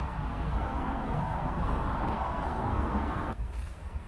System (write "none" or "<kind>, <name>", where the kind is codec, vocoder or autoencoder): codec, SNAC